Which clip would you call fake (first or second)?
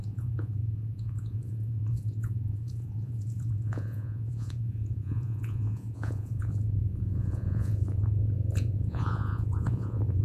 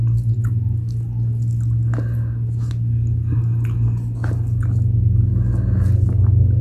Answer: first